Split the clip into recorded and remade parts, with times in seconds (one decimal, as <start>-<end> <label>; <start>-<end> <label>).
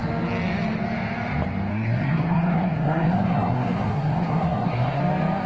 0.0-1.7 recorded; 1.7-5.0 remade; 5.0-5.5 recorded